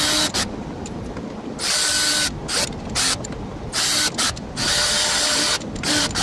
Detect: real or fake real